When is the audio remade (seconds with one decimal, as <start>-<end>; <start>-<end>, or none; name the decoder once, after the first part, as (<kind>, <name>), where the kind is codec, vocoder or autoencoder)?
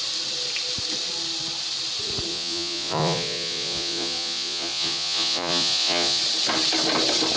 2.3-6.2 (vocoder, Vocos)